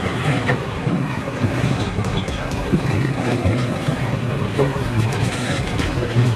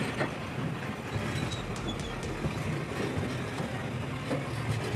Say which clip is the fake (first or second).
first